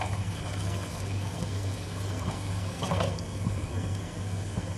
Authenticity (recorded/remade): remade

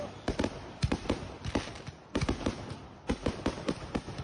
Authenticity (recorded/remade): recorded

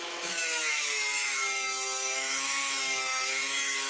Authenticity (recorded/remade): remade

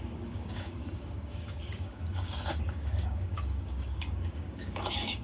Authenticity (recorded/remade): remade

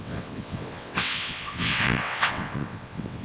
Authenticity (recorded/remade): remade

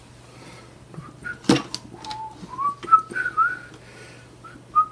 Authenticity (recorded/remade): recorded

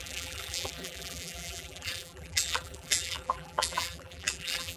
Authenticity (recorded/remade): remade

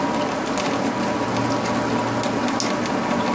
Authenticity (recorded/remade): recorded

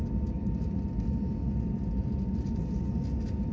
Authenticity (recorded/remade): recorded